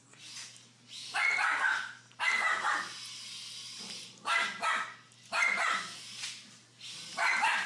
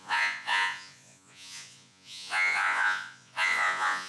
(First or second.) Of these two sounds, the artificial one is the second